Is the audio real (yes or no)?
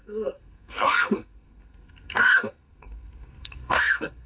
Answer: no